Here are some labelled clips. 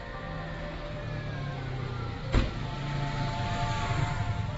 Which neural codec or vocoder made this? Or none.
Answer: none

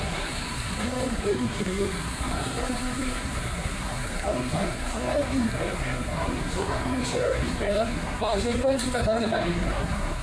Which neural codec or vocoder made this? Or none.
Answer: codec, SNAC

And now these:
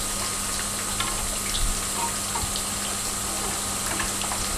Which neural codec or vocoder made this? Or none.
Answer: none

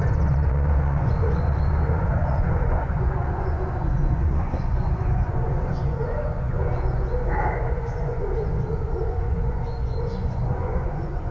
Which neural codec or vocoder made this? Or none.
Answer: vocoder, Vocos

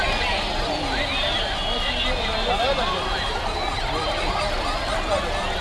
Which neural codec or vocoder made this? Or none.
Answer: none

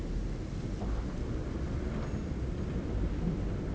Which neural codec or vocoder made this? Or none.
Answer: none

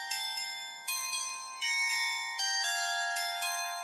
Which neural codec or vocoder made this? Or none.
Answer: autoencoder, DAC-VAE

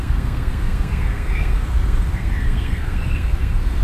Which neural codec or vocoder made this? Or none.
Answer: codec, SNAC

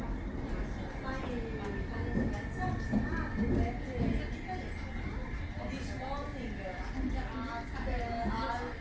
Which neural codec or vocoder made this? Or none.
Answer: none